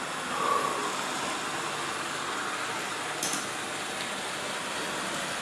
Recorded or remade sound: recorded